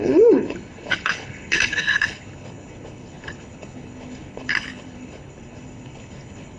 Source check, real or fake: fake